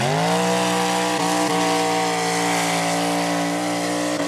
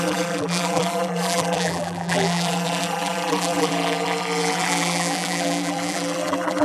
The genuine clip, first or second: first